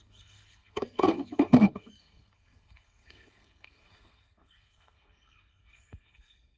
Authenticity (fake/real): fake